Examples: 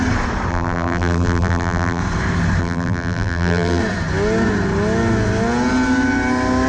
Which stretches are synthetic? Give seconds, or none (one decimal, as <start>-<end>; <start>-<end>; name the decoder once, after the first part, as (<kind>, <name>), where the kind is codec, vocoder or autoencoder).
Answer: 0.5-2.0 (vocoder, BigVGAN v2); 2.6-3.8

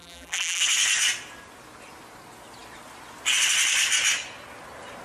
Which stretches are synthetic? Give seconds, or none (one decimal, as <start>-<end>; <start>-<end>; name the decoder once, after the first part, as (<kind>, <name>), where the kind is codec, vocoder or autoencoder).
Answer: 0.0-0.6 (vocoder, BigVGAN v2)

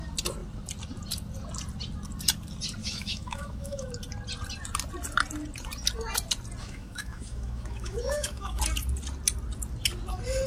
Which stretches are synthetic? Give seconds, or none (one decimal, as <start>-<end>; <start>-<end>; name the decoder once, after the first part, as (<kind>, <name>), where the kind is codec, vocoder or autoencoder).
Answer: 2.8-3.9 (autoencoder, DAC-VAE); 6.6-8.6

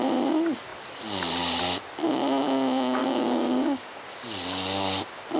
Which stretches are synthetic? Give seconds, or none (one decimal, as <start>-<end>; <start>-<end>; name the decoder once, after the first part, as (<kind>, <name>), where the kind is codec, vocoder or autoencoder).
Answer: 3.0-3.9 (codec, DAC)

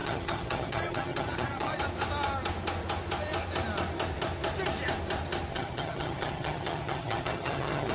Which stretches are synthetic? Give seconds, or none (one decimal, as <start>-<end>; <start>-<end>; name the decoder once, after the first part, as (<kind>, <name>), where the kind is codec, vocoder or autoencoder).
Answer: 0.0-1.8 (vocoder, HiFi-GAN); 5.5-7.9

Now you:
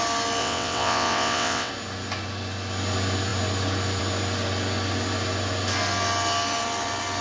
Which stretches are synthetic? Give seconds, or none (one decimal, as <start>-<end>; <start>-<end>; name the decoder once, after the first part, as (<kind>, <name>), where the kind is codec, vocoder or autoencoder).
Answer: 0.4-1.7 (vocoder, WaveNeXt)

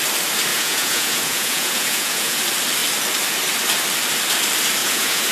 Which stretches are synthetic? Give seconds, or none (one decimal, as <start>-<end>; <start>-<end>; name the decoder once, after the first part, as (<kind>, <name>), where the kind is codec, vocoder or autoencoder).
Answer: 0.5-2.4 (vocoder, Vocos); 4.8-5.3

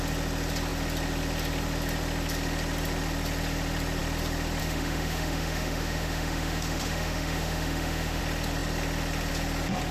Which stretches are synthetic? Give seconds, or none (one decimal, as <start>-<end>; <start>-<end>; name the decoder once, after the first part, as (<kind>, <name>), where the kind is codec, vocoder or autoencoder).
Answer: 4.6-8.2 (autoencoder, DAC-VAE)